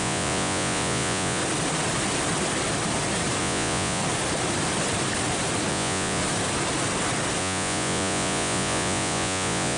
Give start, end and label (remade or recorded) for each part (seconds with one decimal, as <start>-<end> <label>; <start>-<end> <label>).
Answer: 0.0-1.4 remade; 1.4-3.4 recorded; 3.4-4.0 remade; 4.0-5.7 recorded; 5.7-6.2 remade; 6.2-7.4 recorded; 7.4-9.8 remade

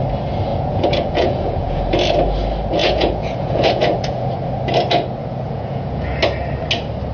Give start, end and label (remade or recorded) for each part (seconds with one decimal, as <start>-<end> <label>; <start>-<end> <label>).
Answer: 0.0-0.5 recorded; 0.5-1.8 remade; 1.8-2.8 recorded; 2.8-4.3 remade; 4.3-5.2 recorded; 5.2-6.1 remade; 6.1-7.1 recorded

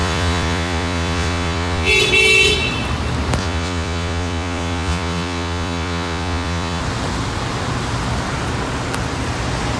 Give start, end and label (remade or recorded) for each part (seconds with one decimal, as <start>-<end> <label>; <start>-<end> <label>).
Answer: 0.0-1.9 remade; 1.9-3.4 recorded; 3.4-6.8 remade; 6.8-9.8 recorded

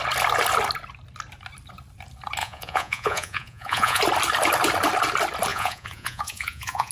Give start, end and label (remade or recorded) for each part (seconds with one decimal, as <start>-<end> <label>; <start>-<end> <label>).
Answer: 0.0-2.4 recorded; 2.4-4.0 remade; 4.0-5.5 recorded; 5.5-6.9 remade

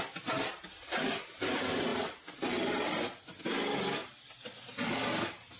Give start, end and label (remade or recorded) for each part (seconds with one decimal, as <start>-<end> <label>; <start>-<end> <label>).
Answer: 0.0-5.6 recorded

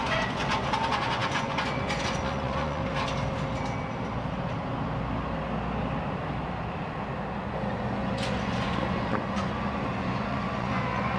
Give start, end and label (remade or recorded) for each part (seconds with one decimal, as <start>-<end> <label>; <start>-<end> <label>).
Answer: 0.0-2.8 remade; 2.8-7.3 recorded; 7.3-11.2 remade

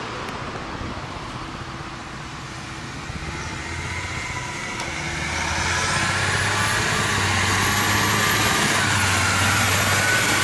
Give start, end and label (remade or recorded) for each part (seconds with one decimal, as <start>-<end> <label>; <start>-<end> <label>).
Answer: 0.0-10.4 recorded

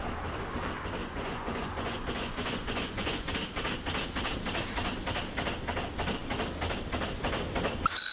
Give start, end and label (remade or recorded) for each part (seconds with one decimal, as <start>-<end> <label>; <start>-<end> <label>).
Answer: 0.0-1.0 recorded; 1.0-3.3 remade; 3.3-8.1 recorded